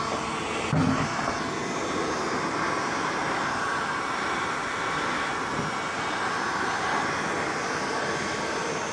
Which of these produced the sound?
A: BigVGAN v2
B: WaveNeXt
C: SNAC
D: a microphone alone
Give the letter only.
D